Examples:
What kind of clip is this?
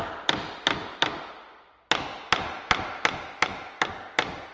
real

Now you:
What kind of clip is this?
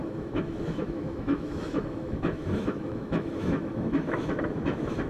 fake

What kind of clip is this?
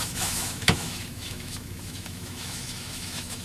fake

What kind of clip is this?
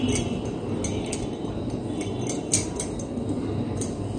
real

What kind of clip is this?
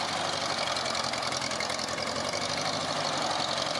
real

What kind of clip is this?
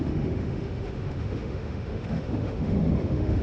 fake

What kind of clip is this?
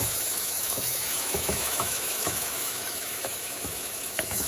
fake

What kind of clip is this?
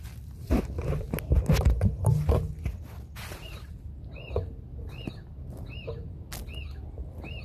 real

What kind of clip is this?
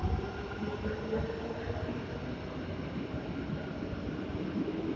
real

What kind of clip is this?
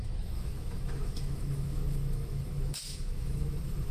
fake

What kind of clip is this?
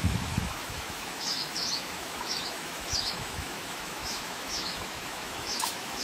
fake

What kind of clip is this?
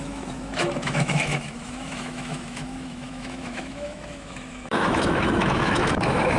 fake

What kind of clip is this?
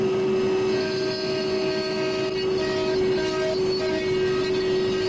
real